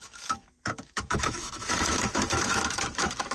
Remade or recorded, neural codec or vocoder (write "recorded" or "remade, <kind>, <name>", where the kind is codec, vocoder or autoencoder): remade, autoencoder, DAC-VAE